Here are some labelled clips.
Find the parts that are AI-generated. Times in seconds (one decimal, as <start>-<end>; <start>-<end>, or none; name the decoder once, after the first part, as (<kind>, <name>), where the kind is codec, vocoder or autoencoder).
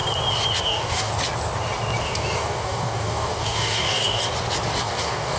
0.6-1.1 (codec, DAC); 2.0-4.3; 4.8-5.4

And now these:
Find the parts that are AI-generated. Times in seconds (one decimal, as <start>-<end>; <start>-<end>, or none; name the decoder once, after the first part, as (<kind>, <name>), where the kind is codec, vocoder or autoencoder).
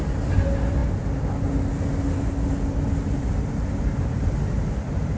none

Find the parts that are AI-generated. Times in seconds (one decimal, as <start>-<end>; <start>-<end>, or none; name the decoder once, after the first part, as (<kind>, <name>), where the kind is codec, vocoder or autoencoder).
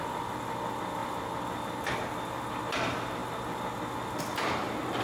none